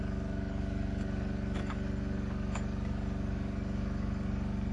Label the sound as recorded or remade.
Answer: remade